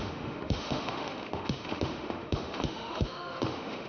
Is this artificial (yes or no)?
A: yes